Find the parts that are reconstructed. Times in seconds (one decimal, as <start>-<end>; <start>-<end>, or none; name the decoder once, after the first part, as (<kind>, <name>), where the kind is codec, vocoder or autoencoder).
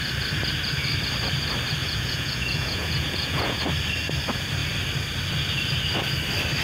1.8-3.6 (vocoder, Vocos)